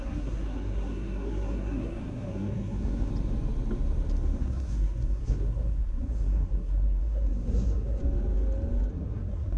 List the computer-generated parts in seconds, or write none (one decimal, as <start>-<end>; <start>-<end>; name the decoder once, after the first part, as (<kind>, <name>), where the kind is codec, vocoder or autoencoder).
0.0-3.1 (codec, SNAC); 4.4-8.0; 8.9-9.6